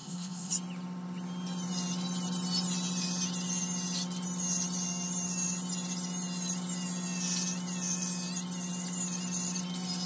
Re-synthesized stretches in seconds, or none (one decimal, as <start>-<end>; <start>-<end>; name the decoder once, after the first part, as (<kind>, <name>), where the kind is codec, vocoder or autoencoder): 0.0-0.5 (codec, ZipCodec)